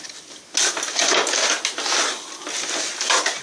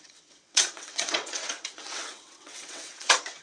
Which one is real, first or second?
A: first